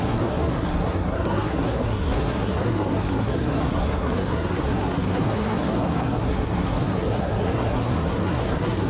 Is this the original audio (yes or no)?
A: no